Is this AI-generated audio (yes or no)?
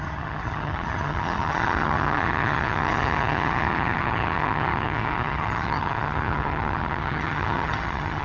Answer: yes